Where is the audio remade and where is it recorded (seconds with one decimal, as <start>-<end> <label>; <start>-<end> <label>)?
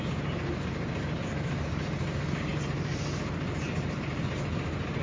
0.0-2.5 recorded; 2.5-4.0 remade; 4.0-5.0 recorded